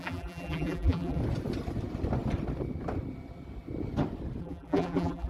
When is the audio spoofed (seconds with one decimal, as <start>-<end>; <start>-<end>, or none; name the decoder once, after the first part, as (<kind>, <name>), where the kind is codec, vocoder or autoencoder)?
0.0-1.2 (vocoder, BigVGAN v2); 4.4-5.3